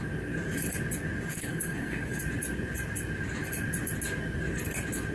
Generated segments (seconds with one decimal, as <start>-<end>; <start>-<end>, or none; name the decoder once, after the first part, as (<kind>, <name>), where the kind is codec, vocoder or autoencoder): 1.3-2.2 (codec, SNAC)